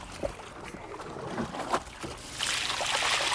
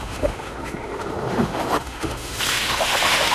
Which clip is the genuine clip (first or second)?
first